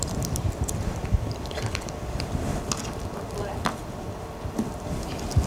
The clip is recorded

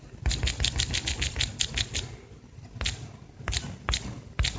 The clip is recorded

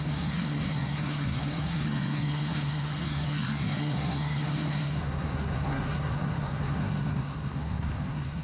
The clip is remade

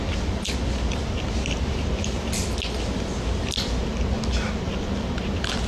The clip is recorded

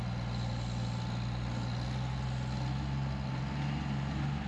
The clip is recorded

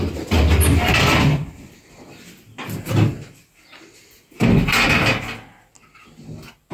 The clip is recorded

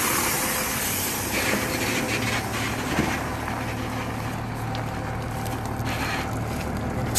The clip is recorded